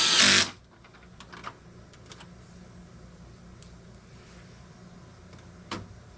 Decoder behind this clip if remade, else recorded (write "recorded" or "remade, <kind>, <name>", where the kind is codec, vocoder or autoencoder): recorded